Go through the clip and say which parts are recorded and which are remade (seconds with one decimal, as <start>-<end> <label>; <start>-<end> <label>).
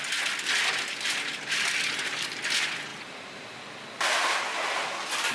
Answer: 0.0-2.9 recorded; 2.9-3.5 remade; 3.5-5.3 recorded